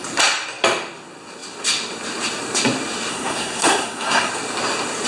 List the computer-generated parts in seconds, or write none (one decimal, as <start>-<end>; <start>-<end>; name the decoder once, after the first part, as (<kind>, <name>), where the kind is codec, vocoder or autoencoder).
3.1-4.3 (codec, SNAC)